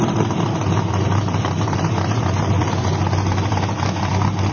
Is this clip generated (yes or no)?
no